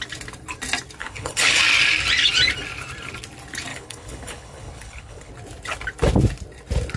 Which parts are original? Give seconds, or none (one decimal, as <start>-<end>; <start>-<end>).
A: 0.0-1.0; 1.6-3.7; 5.3-7.0